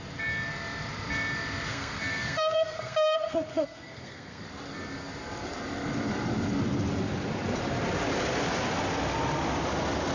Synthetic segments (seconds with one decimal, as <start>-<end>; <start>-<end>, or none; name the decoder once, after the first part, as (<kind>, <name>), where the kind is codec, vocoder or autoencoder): 1.7-4.4 (codec, SNAC)